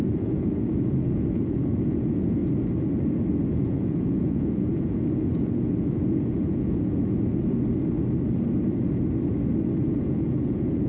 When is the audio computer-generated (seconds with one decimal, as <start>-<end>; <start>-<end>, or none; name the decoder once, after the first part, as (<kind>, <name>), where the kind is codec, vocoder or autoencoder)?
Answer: 0.0-2.4 (vocoder, Vocos); 3.5-7.3; 9.9-10.9

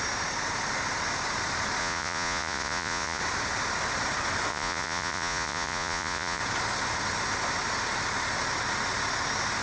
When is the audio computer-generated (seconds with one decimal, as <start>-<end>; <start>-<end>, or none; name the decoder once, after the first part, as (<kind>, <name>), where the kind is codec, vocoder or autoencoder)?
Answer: 1.8-3.2 (vocoder, Vocos); 4.5-6.4

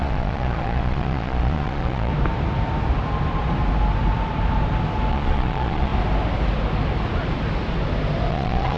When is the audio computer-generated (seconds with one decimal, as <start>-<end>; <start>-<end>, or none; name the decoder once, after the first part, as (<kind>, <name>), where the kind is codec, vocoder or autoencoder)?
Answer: 0.0-2.1 (vocoder, Vocos); 5.1-5.9; 8.3-8.8

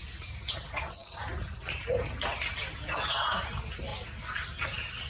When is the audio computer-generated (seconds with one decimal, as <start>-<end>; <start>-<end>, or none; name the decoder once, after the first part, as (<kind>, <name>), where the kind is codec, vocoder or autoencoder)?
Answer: none

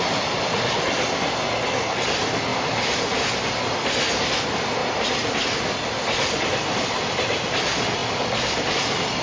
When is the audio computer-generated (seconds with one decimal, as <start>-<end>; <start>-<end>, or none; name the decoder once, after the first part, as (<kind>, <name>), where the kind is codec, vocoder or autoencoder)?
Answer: none

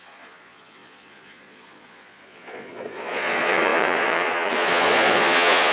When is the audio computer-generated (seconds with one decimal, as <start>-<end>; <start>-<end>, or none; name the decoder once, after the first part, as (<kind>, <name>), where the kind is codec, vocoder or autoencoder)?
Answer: 0.0-5.7 (vocoder, Vocos)

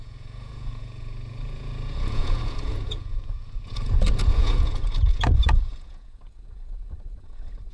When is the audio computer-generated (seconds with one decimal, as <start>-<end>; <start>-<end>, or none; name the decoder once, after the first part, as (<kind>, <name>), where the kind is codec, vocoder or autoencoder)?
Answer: 0.0-7.7 (vocoder, Vocos)